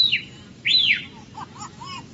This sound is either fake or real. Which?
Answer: real